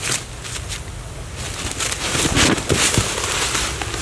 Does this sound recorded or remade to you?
recorded